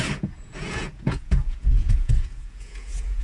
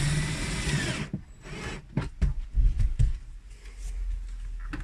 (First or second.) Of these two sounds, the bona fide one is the second